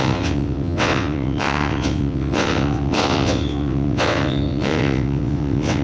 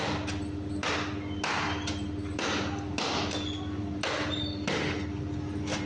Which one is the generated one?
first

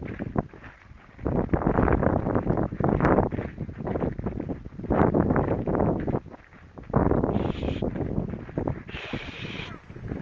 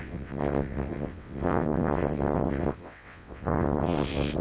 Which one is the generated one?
second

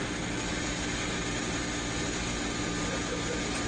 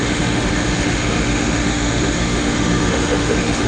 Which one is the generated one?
second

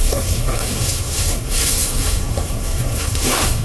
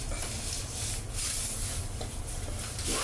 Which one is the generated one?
first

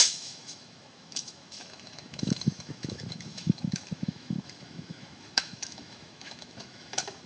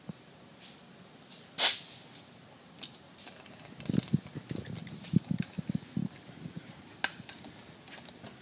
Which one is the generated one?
first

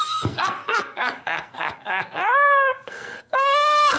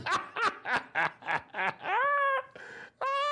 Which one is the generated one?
first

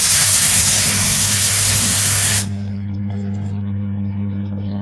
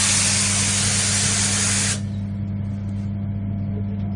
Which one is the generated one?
first